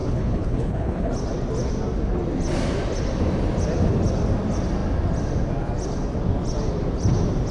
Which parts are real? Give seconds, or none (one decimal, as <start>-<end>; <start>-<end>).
1.1-7.5